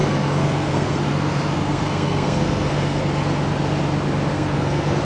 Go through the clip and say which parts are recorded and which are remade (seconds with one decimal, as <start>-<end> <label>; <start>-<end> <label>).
0.0-3.0 remade; 3.0-4.3 recorded; 4.3-5.0 remade